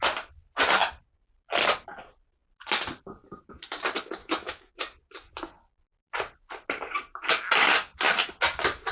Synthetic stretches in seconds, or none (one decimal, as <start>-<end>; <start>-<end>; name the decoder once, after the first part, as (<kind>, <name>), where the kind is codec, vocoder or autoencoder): 4.2-4.7 (autoencoder, DAC-VAE)